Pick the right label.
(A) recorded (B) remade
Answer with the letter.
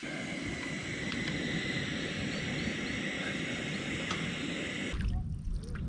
A